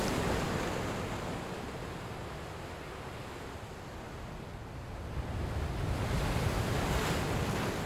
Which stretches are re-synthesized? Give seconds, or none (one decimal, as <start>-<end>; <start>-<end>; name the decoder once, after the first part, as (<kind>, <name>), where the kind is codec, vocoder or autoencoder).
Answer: 0.0-0.6 (vocoder, BigVGAN v2)